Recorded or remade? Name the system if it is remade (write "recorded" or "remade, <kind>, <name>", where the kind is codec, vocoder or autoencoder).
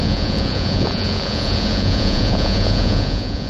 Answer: remade, vocoder, Vocos